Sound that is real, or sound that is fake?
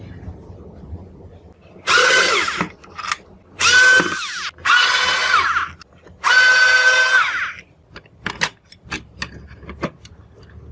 real